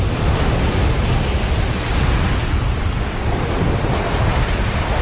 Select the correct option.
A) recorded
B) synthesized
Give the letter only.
A